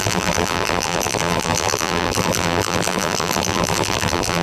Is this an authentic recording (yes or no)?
no